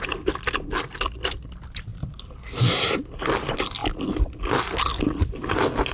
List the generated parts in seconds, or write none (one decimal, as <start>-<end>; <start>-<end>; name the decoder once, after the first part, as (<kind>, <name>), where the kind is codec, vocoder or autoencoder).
none